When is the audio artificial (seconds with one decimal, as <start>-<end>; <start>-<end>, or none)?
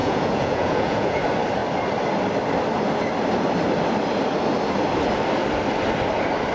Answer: 0.0-1.2